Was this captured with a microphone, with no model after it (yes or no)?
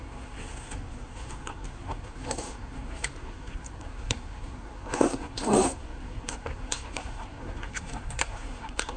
no